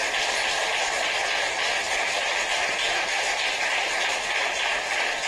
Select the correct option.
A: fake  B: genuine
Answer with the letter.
B